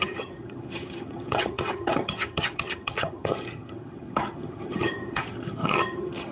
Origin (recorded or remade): remade